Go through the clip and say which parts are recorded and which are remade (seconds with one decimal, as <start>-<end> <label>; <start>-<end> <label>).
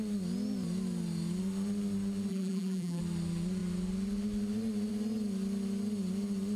0.0-2.3 recorded; 2.3-3.0 remade; 3.0-6.6 recorded